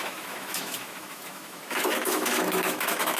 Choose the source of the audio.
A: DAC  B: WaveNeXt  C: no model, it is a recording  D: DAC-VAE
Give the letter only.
D